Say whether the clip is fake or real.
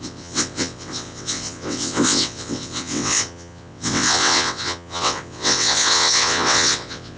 fake